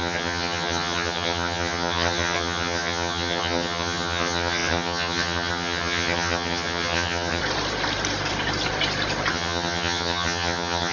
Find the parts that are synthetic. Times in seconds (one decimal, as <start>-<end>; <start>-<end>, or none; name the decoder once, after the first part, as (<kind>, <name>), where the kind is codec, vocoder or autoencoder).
0.0-7.4 (vocoder, HiFi-GAN); 9.3-10.9